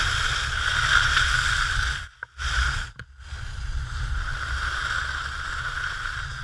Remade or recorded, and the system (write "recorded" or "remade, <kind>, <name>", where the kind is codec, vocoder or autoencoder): recorded